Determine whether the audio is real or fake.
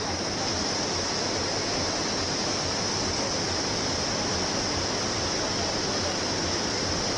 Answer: real